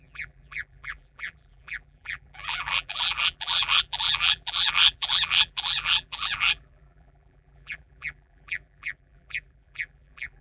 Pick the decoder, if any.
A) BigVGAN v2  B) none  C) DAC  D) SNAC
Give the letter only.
A